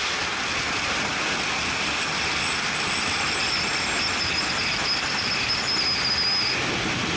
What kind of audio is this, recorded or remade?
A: recorded